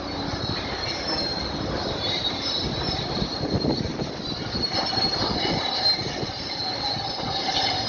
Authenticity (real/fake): real